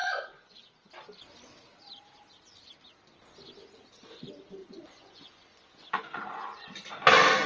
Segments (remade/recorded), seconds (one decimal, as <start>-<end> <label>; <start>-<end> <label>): 0.0-0.9 remade; 0.9-4.6 recorded; 4.6-6.9 remade; 6.9-7.5 recorded